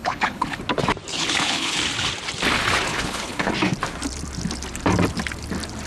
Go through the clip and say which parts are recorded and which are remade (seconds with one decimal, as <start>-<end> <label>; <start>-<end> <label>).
0.0-0.6 remade; 0.6-1.1 recorded; 1.1-1.8 remade; 1.8-2.9 recorded; 2.9-3.5 remade; 3.5-5.9 recorded